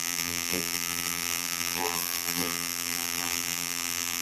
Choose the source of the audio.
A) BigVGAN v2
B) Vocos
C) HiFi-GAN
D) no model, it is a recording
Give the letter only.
A